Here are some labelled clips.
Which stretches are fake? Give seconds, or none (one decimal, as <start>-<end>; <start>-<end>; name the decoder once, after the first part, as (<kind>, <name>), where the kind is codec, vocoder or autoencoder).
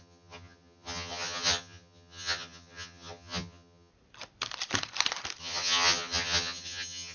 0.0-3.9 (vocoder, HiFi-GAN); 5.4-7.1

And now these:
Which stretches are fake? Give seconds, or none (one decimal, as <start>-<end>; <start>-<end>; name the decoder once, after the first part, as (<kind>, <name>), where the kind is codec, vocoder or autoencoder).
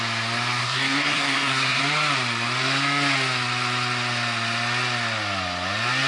0.6-1.8 (codec, SNAC)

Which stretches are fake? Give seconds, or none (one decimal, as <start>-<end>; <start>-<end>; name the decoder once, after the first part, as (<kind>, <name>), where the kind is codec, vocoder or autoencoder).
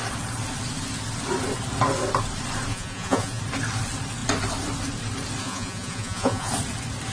2.7-3.4 (vocoder, Vocos); 5.4-6.5